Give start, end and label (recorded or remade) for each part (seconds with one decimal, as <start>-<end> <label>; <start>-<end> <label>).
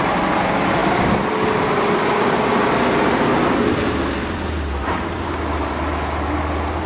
0.0-6.9 recorded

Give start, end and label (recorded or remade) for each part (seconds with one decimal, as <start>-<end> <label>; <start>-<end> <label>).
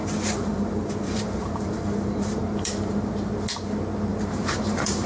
0.0-3.1 remade; 3.1-4.1 recorded; 4.1-5.1 remade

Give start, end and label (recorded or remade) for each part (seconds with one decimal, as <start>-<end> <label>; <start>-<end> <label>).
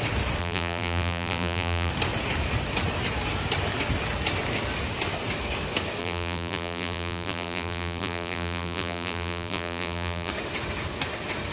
0.0-0.4 recorded; 0.4-1.9 remade; 1.9-6.0 recorded; 6.0-10.3 remade; 10.3-11.5 recorded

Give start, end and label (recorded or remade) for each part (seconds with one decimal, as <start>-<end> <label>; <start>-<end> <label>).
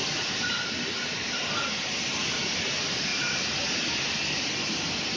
0.0-5.2 recorded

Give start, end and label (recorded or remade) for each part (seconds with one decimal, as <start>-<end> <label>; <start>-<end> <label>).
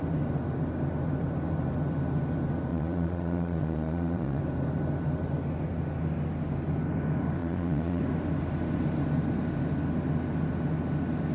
0.0-2.7 recorded; 2.7-4.4 remade; 4.4-7.4 recorded; 7.4-8.0 remade; 8.0-11.3 recorded